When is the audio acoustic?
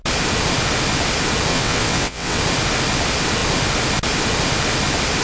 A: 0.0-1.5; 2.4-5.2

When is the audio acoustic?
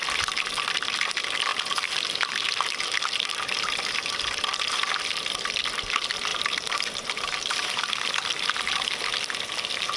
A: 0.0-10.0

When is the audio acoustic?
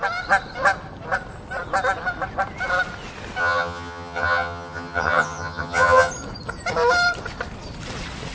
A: 0.0-3.4; 6.1-8.3